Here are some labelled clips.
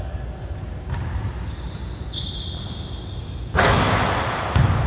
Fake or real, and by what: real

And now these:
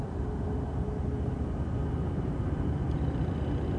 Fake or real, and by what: real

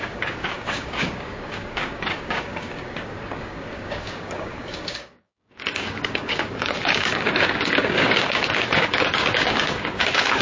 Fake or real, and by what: fake, codec, DAC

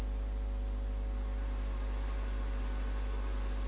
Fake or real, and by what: real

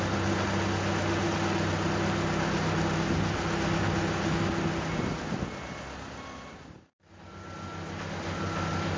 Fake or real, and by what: real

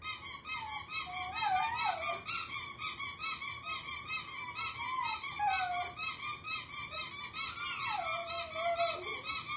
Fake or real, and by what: real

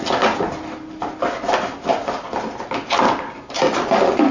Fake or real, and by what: real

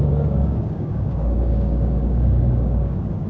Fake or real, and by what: fake, codec, DAC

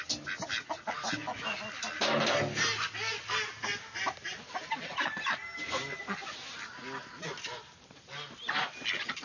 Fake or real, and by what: real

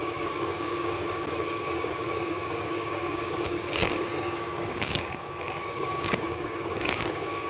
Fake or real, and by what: fake, codec, DAC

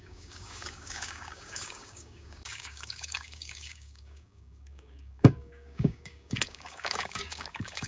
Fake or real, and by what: fake, codec, DAC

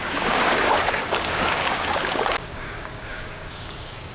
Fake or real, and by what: fake, codec, DAC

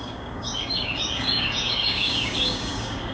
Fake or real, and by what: fake, codec, DAC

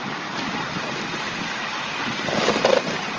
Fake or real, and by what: real